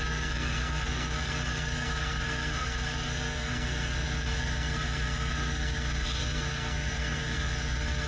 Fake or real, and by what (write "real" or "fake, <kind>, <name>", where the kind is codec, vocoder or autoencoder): fake, codec, SNAC